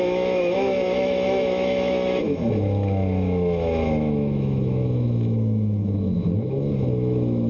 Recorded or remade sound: remade